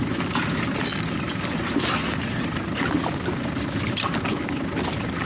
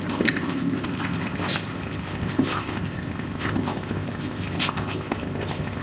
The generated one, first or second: second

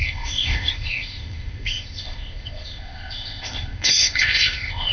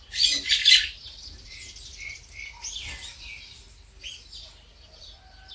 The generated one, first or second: first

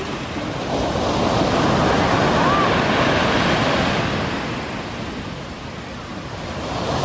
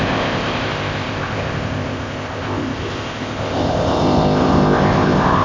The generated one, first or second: second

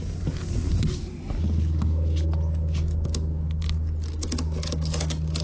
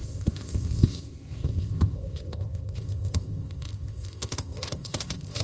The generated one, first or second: second